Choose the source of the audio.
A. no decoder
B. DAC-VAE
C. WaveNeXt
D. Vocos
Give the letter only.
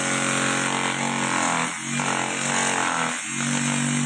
A